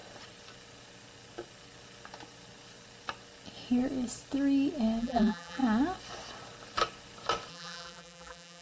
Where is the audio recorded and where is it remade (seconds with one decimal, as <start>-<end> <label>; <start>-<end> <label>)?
0.0-5.0 recorded; 5.0-5.6 remade; 5.6-7.5 recorded; 7.5-8.6 remade